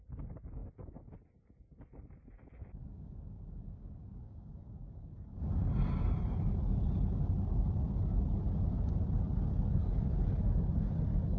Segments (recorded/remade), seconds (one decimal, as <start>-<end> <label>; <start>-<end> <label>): 0.0-2.8 recorded; 2.8-5.5 remade; 5.5-11.4 recorded